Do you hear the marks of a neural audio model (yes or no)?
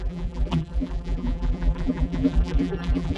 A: yes